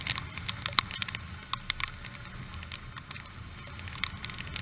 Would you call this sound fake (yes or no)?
no